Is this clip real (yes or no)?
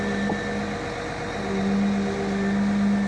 yes